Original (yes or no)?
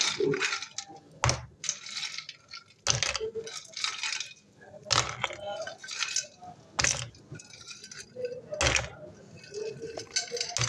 yes